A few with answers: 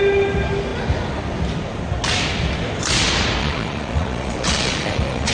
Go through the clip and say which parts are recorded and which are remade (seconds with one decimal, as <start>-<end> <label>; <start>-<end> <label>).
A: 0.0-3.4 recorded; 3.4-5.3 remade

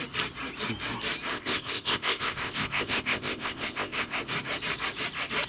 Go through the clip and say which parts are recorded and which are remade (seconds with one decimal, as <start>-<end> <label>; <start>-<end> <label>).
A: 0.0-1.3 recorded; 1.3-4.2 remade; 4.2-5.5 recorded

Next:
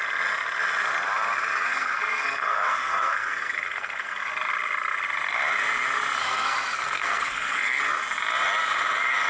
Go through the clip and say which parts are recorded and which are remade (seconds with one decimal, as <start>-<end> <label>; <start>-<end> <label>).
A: 0.0-1.7 recorded; 1.7-4.3 remade; 4.3-6.2 recorded; 6.2-7.8 remade; 7.8-9.3 recorded

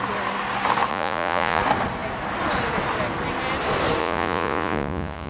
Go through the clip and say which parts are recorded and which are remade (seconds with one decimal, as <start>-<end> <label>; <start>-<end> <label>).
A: 0.0-0.9 recorded; 0.9-1.6 remade; 1.6-4.0 recorded; 4.0-5.3 remade

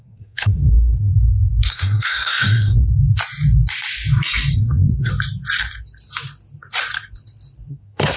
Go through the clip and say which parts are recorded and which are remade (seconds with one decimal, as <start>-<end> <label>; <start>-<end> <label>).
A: 0.0-1.1 remade; 1.1-1.7 recorded; 1.7-2.9 remade; 2.9-4.5 recorded; 4.5-5.1 remade; 5.1-7.7 recorded; 7.7-8.2 remade

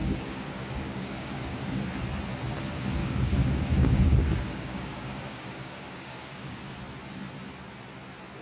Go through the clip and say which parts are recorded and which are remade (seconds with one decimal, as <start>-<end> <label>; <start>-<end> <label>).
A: 0.0-1.8 remade; 1.8-3.0 recorded; 3.0-6.6 remade; 6.6-8.4 recorded

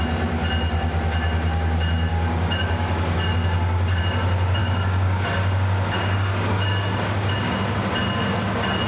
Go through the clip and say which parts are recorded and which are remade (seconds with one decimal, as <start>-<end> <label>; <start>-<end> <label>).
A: 0.0-2.1 recorded; 2.1-4.0 remade; 4.0-4.6 recorded; 4.6-7.3 remade; 7.3-8.9 recorded